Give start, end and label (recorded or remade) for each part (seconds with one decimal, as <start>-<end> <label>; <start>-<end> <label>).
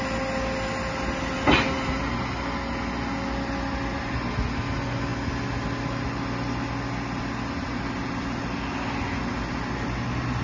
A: 0.0-10.4 recorded